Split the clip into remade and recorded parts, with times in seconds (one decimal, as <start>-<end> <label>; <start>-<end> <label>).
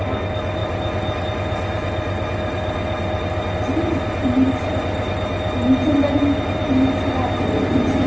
0.0-8.1 recorded